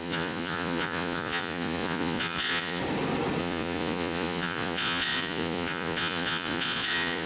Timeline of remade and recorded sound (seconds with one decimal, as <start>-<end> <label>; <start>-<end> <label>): 0.0-2.8 remade; 2.8-3.4 recorded; 3.4-7.3 remade